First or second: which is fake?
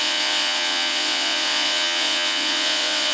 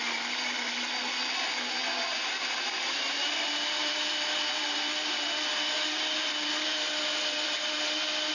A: first